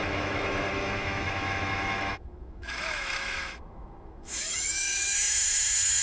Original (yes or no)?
no